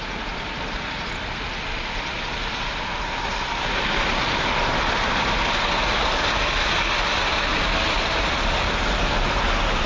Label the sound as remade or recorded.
recorded